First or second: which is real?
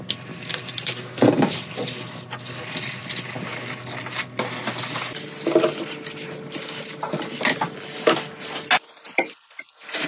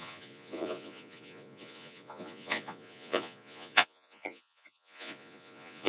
first